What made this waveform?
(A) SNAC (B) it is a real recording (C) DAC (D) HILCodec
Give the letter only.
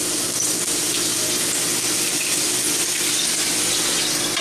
B